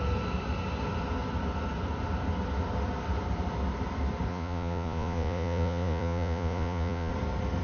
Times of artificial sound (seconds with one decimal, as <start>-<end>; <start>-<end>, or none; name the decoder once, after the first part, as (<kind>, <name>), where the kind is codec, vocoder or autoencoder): 4.3-7.1 (vocoder, Vocos)